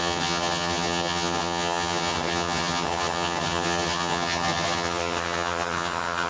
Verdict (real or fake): fake